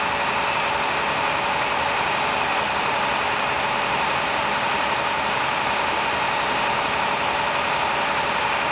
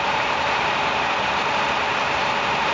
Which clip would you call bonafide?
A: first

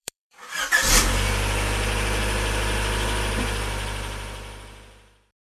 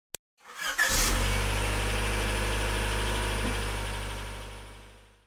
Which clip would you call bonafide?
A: second